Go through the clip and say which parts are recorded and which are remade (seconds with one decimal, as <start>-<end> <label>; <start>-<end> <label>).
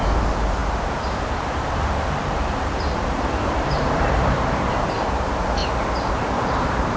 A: 0.0-5.6 remade; 5.6-6.1 recorded; 6.1-7.0 remade